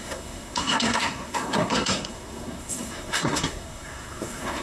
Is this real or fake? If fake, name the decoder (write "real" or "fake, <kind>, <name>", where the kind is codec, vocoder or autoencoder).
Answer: fake, codec, SNAC